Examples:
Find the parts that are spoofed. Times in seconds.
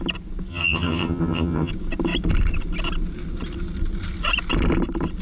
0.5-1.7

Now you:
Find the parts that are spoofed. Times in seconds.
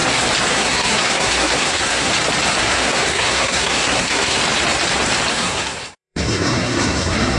0.5-2.1; 2.6-4.4; 5.3-7.4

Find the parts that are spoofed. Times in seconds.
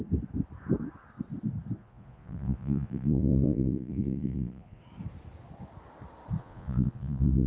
1.8-4.8; 6.4-7.5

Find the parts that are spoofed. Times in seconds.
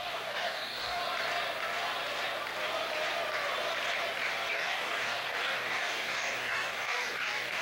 0.0-1.0; 4.5-7.6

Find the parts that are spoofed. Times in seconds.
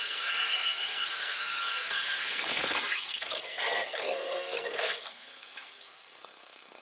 0.0-6.8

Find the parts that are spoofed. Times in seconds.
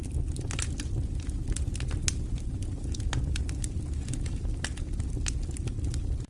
none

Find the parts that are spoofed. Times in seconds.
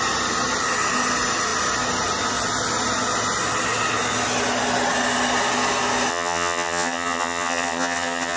6.1-8.4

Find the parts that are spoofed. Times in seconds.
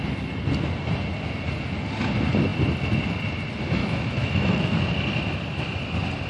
3.8-4.9